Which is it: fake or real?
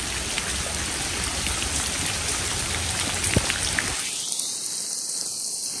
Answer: real